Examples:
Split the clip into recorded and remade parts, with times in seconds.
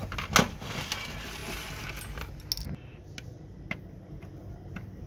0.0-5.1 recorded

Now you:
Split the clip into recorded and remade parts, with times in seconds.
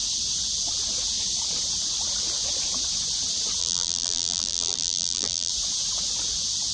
0.0-3.6 recorded; 3.6-5.5 remade; 5.5-6.7 recorded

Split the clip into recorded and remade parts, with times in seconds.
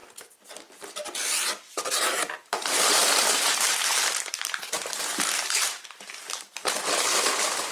0.0-1.7 recorded; 1.7-7.7 remade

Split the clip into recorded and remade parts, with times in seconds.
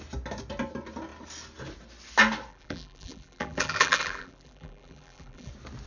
0.0-2.5 recorded; 2.5-5.5 remade; 5.5-5.9 recorded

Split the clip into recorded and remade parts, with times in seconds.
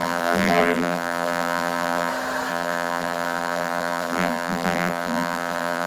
0.0-2.1 remade; 2.1-2.5 recorded; 2.5-5.9 remade